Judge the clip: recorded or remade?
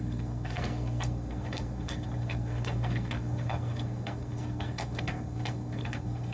remade